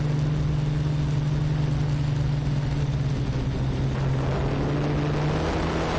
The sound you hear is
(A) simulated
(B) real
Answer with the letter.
B